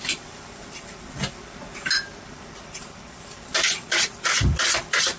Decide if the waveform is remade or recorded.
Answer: recorded